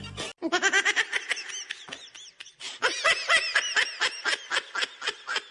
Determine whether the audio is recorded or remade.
recorded